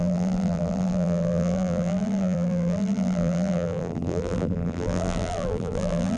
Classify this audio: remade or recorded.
remade